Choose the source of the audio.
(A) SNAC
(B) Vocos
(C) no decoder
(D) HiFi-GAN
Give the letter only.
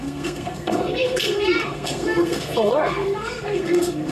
A